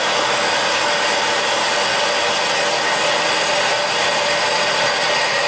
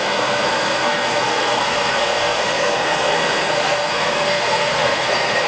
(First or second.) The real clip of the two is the first